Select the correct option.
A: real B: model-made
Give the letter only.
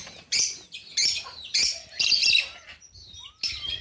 A